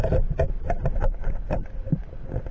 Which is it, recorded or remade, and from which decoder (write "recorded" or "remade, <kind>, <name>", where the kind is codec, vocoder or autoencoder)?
recorded